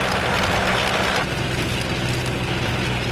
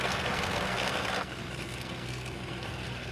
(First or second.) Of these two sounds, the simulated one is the second